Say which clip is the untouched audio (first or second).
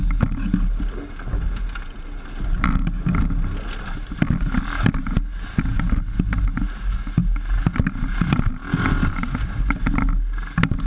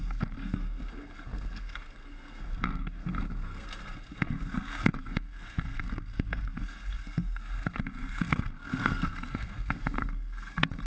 first